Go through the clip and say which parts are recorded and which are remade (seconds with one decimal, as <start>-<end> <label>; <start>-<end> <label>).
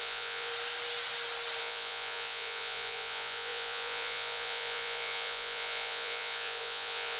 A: 0.0-0.5 remade; 0.5-1.6 recorded; 1.6-7.2 remade